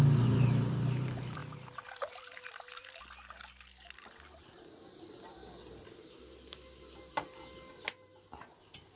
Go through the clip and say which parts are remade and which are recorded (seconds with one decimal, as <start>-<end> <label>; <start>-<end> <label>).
0.0-9.0 recorded